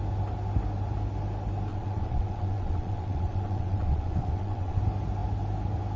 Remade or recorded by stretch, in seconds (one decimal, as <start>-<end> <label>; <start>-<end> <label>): 0.0-1.7 recorded; 1.7-4.8 remade; 4.8-6.0 recorded